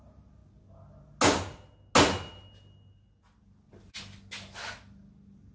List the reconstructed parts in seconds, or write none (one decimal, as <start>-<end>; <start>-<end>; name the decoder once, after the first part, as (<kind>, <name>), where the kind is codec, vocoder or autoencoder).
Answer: none